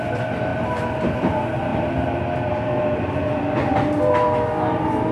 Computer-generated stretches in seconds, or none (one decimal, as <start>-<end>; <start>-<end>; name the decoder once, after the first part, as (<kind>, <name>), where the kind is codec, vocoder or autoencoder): 0.5-1.2 (vocoder, BigVGAN v2)